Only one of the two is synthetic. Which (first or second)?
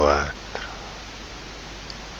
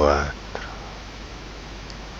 second